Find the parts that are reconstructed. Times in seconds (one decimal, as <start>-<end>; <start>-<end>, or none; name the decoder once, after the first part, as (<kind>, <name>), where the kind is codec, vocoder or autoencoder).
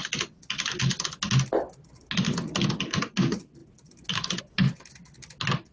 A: none